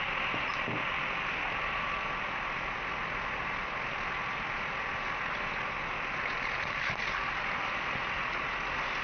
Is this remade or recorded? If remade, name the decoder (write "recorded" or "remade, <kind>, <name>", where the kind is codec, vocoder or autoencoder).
recorded